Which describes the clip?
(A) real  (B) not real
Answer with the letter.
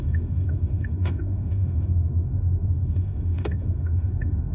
B